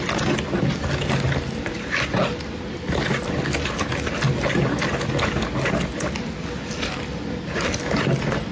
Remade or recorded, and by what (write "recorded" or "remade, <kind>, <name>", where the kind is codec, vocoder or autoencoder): recorded